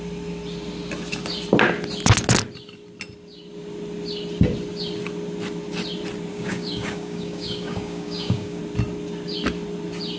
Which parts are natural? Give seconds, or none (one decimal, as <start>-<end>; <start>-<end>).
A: 0.0-6.3; 8.6-10.2